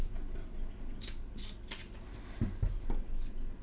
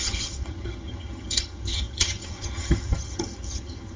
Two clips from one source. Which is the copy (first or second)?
second